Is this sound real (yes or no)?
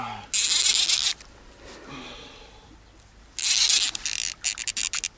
yes